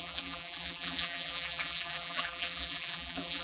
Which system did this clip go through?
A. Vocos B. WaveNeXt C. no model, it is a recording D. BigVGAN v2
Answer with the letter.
D